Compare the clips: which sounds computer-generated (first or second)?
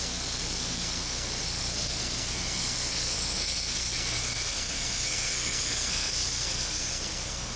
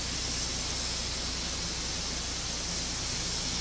first